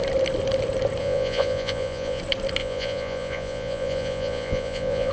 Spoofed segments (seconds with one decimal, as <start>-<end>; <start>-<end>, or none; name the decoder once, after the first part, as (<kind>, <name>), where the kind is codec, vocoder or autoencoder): 1.0-2.2 (vocoder, Vocos); 2.6-5.1